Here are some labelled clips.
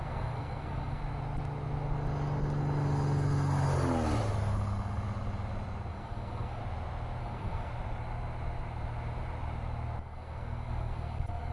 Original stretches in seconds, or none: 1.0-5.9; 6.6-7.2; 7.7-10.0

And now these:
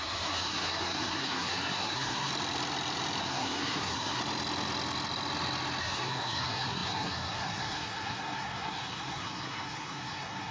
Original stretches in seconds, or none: 2.3-3.2; 4.2-5.8

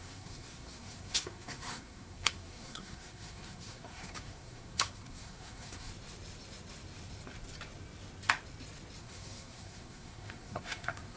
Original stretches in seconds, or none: 5.9-9.0

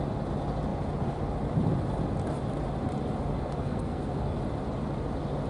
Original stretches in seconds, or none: 0.0-3.6; 4.4-5.5

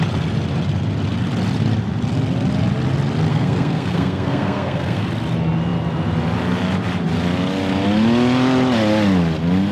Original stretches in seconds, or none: 0.0-3.3; 5.1-9.7

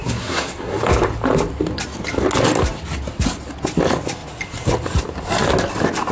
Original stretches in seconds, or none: 0.9-6.1

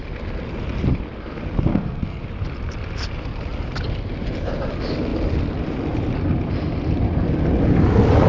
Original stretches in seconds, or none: 0.0-1.7; 2.2-8.3

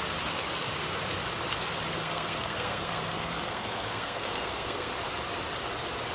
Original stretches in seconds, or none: 0.0-2.0; 4.9-6.1